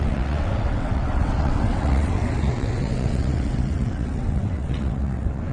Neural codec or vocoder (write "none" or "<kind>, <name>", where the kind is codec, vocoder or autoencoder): vocoder, WaveNeXt